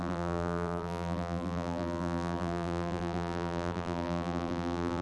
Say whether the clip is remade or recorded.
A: remade